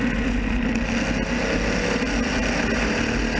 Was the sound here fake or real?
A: real